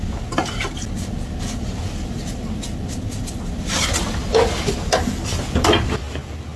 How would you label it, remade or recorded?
recorded